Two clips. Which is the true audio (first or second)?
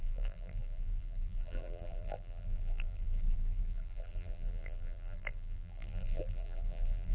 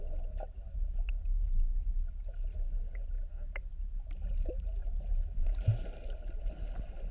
second